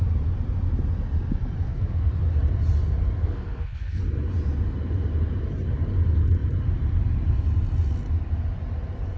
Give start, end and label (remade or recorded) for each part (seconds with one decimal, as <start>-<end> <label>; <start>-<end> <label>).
0.0-1.6 recorded; 1.6-2.1 remade; 2.1-3.2 recorded; 3.2-4.0 remade; 4.0-9.2 recorded